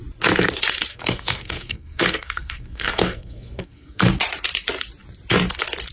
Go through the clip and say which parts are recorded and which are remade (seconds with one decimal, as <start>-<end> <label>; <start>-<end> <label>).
0.0-0.9 recorded; 0.9-4.1 remade; 4.1-5.9 recorded